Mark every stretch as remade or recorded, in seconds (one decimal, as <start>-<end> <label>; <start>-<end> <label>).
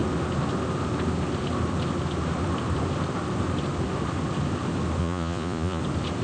0.0-5.0 recorded; 5.0-5.8 remade; 5.8-6.2 recorded